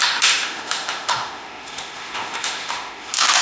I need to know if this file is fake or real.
fake